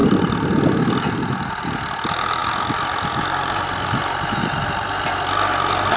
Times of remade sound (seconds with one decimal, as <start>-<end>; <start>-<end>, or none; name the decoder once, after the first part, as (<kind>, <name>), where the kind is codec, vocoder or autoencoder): none